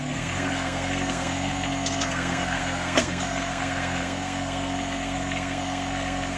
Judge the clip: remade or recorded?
remade